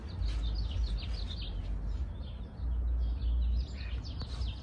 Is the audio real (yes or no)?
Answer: yes